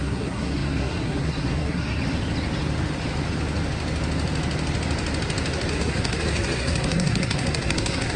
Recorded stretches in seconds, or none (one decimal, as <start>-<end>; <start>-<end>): 2.0-5.7